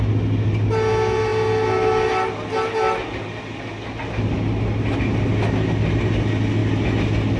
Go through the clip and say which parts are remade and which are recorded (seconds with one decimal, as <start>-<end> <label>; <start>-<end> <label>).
0.0-7.4 recorded